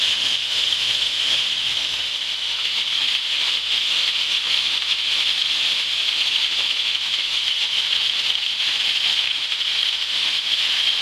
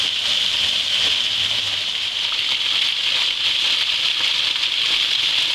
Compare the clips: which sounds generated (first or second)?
first